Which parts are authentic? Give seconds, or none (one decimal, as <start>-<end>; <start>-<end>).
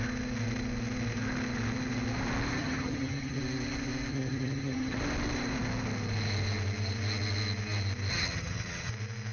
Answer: 0.0-2.6; 3.4-4.1; 5.0-8.1; 8.9-9.3